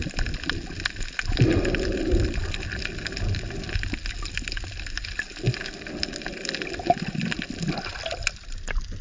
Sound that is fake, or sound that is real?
real